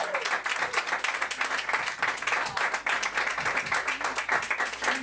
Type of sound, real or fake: real